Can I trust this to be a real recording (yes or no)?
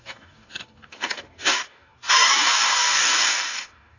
no